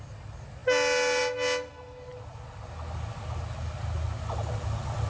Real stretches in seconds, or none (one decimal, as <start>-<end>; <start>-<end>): 0.0-5.1